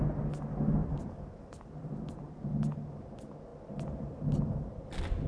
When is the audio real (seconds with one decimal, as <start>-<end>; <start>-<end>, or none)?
0.0-0.8; 2.4-3.5; 4.2-5.3

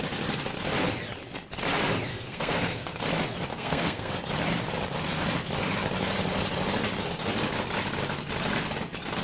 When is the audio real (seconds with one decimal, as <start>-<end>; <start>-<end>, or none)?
0.0-2.1; 3.0-3.5; 4.1-9.2

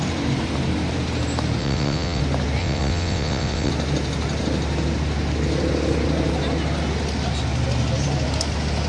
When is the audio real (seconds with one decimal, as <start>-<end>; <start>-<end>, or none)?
0.0-1.6; 2.2-2.6; 3.7-8.9

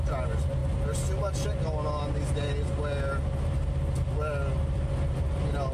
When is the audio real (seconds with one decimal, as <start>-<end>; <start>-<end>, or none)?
0.0-5.7

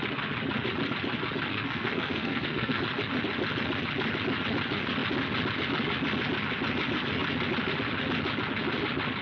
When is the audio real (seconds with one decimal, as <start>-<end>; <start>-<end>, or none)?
0.0-1.5; 2.8-9.2

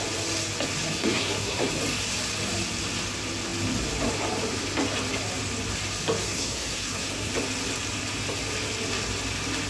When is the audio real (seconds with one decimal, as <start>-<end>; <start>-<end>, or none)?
0.0-1.0; 1.7-6.2; 7.3-9.7